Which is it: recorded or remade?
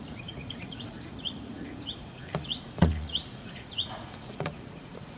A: remade